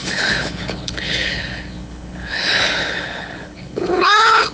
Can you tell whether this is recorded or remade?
remade